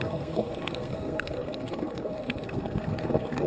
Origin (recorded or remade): remade